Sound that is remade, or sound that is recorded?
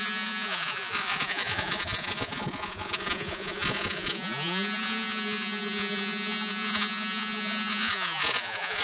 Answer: remade